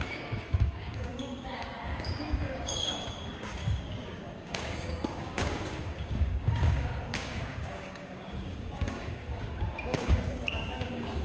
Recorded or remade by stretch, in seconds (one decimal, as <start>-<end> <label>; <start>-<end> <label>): 0.0-11.2 remade